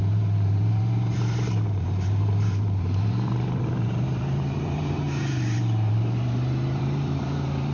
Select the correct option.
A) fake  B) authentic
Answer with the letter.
A